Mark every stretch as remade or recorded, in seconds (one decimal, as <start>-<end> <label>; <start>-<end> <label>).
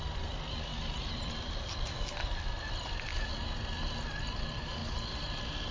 0.0-0.7 recorded; 0.7-2.1 remade; 2.1-3.1 recorded; 3.1-3.8 remade; 3.8-5.7 recorded